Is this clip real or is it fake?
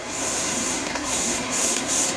fake